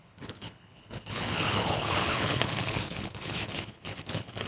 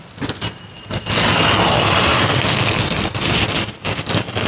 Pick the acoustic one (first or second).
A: second